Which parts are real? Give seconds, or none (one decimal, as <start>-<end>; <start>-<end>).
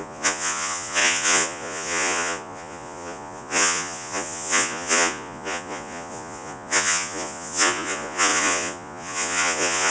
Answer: none